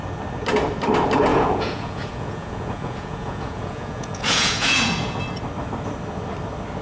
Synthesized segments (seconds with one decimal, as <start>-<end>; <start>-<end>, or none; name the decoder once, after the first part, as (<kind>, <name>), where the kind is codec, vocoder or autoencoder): 1.3-5.2 (vocoder, Vocos)